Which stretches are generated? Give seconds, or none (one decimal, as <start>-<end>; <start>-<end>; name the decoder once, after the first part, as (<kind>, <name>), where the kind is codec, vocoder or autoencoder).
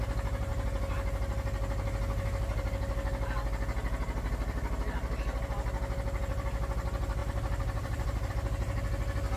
7.2-8.3 (vocoder, BigVGAN v2)